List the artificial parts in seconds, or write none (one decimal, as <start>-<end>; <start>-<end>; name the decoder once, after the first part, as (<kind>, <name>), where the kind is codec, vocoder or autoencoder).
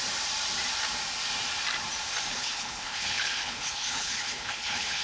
2.3-5.0 (codec, HILCodec)